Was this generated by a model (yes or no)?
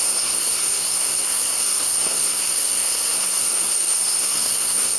yes